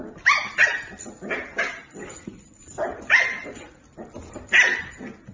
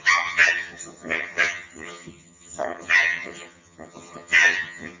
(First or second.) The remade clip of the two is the second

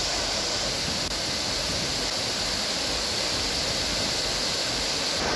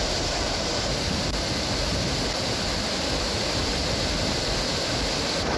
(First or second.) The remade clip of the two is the second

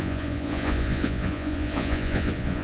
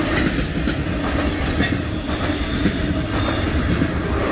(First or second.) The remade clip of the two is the first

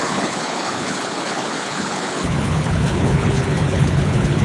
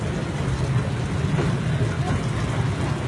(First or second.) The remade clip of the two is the first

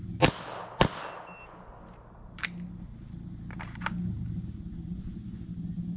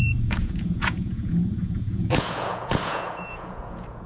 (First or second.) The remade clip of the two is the second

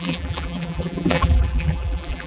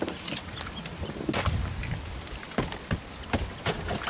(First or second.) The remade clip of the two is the first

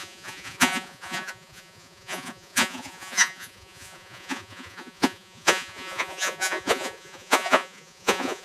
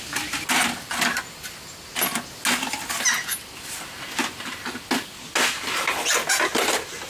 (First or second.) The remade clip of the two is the first